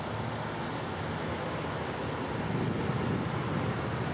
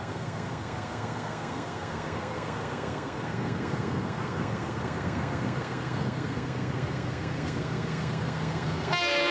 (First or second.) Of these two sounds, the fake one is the second